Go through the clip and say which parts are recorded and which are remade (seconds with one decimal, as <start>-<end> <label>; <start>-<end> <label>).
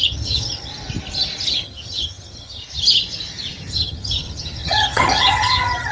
0.0-0.7 remade; 0.7-1.5 recorded; 1.5-2.6 remade; 2.6-3.7 recorded; 3.7-5.9 remade